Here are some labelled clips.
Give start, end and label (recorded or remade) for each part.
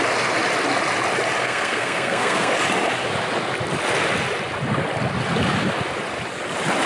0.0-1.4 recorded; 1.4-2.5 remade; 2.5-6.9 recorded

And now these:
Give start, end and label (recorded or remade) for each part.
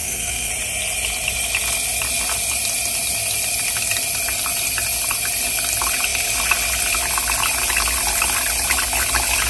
0.0-0.5 remade; 0.5-9.5 recorded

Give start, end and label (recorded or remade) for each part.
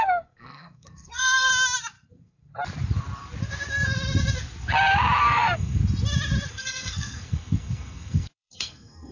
0.0-1.5 remade; 1.5-2.1 recorded; 2.1-2.5 remade; 2.5-5.2 recorded; 5.2-5.8 remade; 5.8-6.5 recorded; 6.5-9.1 remade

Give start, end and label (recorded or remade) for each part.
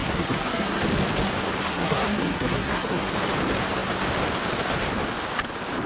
0.0-0.8 remade; 0.8-1.7 recorded; 1.7-3.1 remade; 3.1-5.9 recorded